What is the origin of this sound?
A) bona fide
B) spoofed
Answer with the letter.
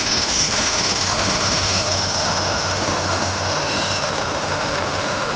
B